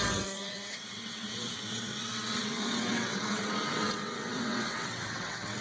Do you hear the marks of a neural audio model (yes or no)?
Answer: yes